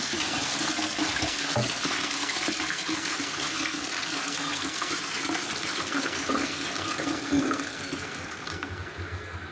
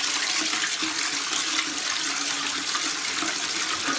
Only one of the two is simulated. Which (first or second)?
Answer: first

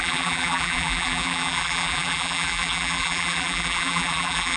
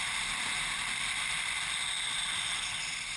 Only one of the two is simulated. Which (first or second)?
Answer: first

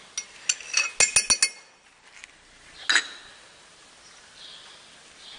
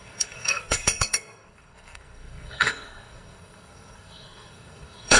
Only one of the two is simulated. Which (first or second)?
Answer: second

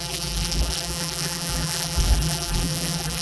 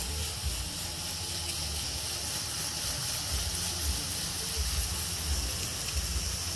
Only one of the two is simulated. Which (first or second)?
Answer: first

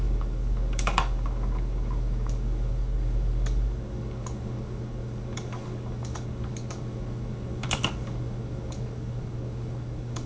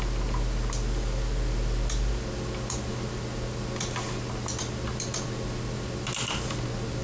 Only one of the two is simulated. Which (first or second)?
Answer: first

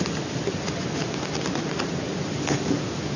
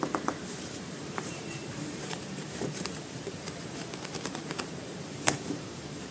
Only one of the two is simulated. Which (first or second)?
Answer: second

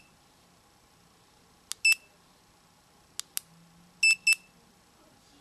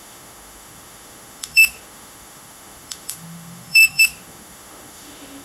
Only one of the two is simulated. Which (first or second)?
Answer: second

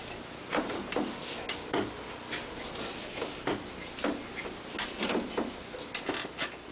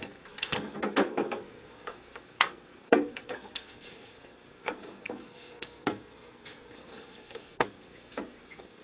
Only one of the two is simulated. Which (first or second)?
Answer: second